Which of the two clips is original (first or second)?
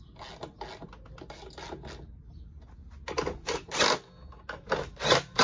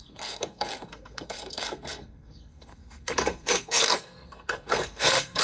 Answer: first